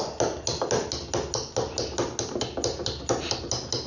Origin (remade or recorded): recorded